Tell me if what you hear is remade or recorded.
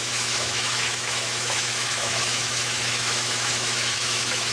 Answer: remade